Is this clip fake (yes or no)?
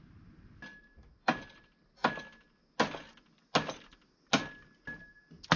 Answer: no